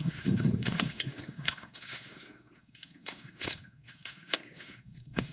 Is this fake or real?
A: fake